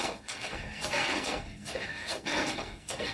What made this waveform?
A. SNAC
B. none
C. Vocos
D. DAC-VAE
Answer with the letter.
A